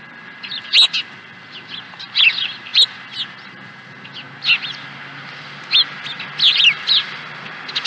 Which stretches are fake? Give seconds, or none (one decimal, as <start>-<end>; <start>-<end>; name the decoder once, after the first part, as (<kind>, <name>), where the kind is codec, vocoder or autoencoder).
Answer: none